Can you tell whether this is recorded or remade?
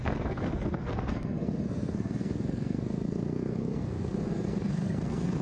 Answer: remade